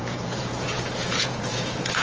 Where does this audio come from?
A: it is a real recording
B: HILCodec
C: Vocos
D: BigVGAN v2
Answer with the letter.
C